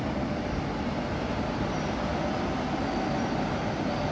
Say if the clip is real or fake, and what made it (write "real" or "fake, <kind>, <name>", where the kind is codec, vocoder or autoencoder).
real